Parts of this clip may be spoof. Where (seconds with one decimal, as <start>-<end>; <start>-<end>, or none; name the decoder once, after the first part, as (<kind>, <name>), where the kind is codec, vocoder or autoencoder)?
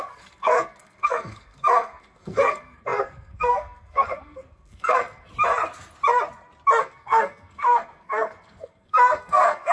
0.0-5.3 (codec, SNAC); 6.8-9.7